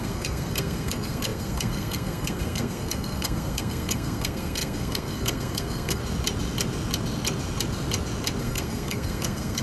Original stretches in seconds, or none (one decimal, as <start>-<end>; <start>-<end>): 6.0-8.4